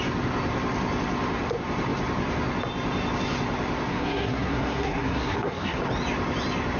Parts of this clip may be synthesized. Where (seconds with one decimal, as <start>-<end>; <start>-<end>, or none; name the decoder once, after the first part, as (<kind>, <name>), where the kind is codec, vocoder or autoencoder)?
3.9-5.8 (codec, SNAC)